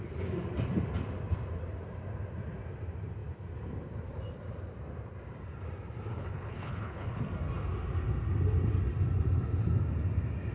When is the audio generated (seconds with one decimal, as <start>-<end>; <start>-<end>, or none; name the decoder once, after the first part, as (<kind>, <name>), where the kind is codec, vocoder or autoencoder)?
6.1-7.2 (codec, HILCodec)